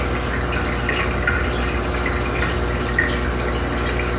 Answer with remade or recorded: recorded